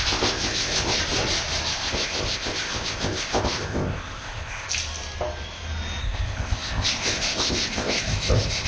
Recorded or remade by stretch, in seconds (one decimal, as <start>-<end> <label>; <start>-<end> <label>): 0.0-1.0 remade; 1.0-1.7 recorded; 1.7-4.7 remade; 4.7-6.0 recorded; 6.0-8.7 remade